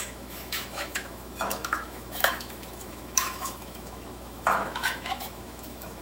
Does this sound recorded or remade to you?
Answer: remade